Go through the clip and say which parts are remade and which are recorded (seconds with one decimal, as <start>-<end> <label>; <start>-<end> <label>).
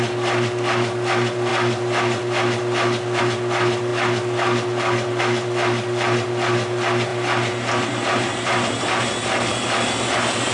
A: 0.0-10.5 recorded